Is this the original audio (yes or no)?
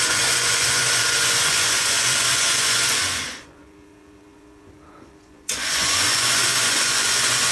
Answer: no